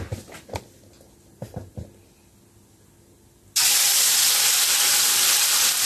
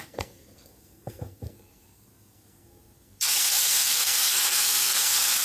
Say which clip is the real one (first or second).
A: first